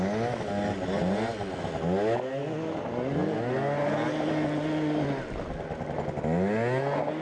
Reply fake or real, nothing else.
real